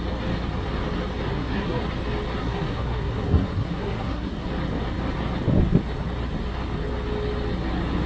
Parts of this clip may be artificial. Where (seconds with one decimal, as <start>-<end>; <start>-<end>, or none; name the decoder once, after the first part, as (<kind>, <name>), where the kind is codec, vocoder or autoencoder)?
1.3-1.8 (codec, SNAC); 2.4-4.5